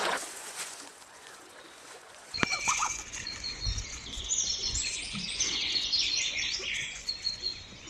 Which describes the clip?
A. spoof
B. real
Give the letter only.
A